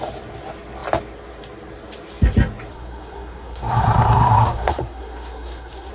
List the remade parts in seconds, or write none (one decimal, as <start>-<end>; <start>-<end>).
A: 2.7-5.9